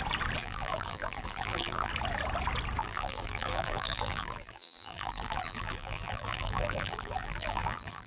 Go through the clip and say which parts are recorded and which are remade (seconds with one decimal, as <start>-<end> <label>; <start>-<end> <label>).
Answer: 0.0-0.4 recorded; 0.4-1.9 remade; 1.9-2.8 recorded; 2.8-8.1 remade